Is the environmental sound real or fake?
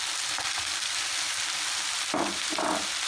real